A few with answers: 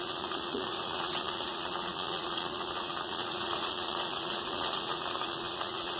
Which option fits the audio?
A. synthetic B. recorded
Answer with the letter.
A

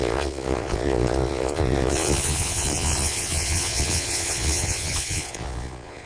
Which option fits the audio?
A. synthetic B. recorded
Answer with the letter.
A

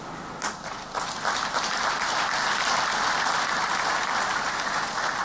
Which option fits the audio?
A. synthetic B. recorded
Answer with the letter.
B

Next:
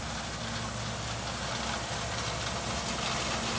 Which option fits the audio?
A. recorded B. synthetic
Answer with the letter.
A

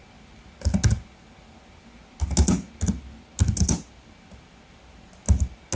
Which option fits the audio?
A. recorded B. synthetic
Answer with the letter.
A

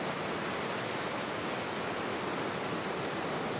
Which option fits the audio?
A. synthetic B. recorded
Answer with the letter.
B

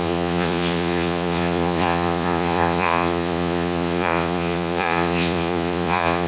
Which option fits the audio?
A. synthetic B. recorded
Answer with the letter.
A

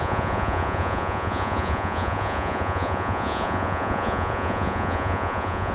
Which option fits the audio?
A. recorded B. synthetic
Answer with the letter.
B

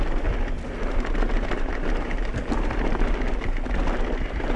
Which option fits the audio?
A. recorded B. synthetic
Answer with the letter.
A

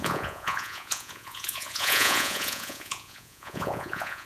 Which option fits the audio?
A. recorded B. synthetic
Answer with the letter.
B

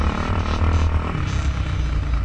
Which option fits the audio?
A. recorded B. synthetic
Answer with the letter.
A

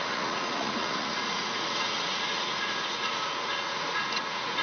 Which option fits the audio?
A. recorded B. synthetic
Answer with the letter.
B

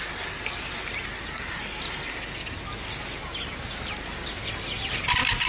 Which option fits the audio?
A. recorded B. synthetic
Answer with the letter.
A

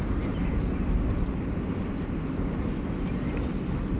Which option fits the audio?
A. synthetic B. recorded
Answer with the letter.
B